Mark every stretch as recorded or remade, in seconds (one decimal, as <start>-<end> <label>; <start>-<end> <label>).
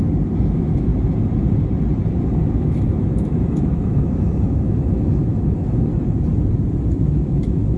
0.0-0.9 remade; 0.9-2.4 recorded; 2.4-5.9 remade; 5.9-6.9 recorded; 6.9-7.8 remade